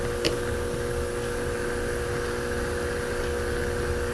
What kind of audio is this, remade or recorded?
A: recorded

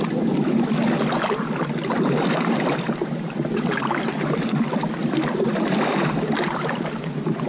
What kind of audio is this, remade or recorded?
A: recorded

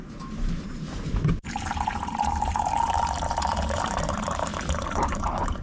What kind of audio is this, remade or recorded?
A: remade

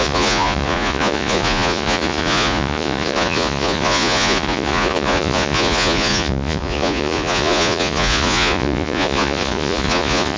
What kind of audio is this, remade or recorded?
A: remade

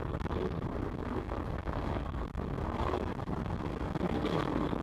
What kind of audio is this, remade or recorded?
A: remade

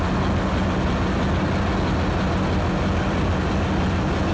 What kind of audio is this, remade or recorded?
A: recorded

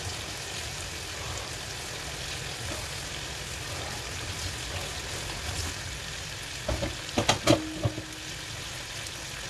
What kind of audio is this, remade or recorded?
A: recorded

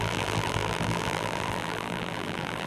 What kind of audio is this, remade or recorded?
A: remade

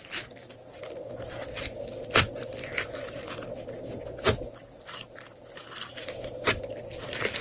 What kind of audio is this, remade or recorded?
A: recorded